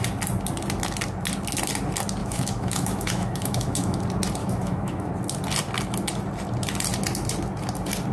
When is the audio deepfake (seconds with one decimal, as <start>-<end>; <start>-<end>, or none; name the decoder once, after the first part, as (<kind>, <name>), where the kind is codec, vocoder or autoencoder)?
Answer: 2.2-4.0 (autoencoder, DAC-VAE); 4.4-5.1